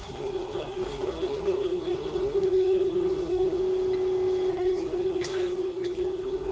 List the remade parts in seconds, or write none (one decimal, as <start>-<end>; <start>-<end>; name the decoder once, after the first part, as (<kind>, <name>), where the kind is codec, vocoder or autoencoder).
0.0-3.6 (codec, SNAC); 4.5-6.5